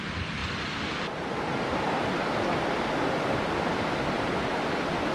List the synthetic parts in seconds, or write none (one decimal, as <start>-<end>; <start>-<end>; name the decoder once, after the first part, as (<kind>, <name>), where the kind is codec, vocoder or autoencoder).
none